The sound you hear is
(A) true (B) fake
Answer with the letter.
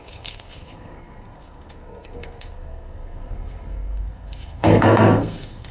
B